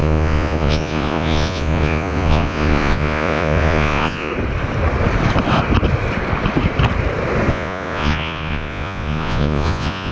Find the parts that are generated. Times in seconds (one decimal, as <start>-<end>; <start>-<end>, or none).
0.0-4.3; 7.5-10.1